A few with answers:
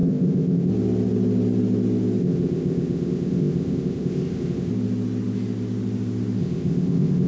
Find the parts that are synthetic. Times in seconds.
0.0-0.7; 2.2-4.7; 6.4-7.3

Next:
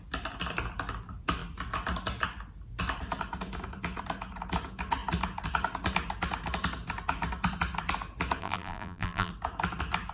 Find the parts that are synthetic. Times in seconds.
8.4-9.3

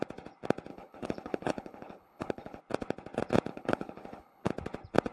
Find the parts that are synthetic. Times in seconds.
0.7-2.6; 3.5-4.5